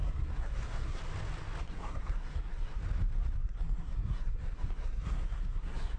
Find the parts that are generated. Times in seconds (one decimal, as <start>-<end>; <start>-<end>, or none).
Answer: 0.0-1.0; 1.6-2.8; 3.4-6.0